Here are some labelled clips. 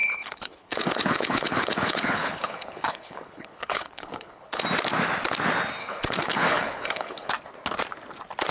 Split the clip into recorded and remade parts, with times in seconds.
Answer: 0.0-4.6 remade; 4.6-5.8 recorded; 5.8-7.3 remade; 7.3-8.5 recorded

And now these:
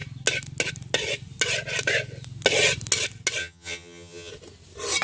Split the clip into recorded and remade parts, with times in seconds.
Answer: 0.0-3.4 recorded; 3.4-4.3 remade; 4.3-5.0 recorded

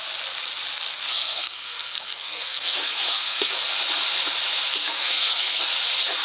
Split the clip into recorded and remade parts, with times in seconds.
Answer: 0.0-0.9 recorded; 0.9-3.5 remade; 3.5-4.8 recorded; 4.8-5.6 remade; 5.6-6.2 recorded